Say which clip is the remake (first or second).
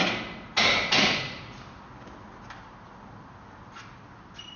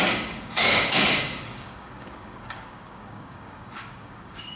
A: second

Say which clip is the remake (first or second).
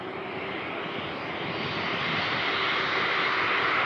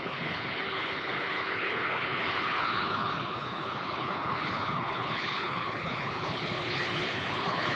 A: second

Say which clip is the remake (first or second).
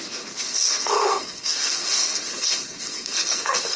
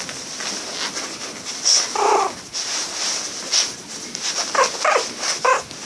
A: first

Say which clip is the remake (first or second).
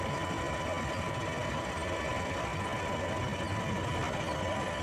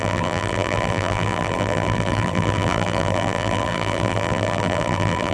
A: second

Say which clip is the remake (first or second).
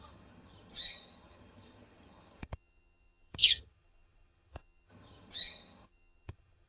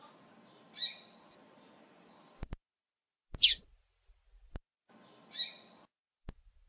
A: first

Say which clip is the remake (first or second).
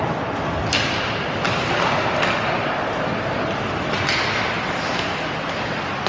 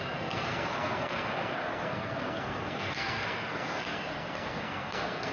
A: second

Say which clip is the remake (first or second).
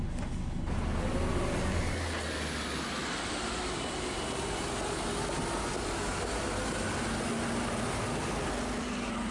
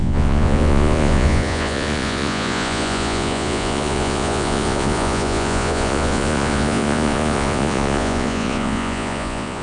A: second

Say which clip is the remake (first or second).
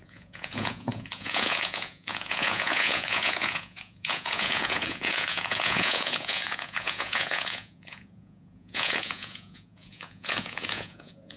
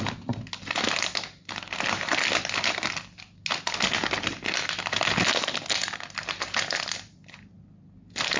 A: first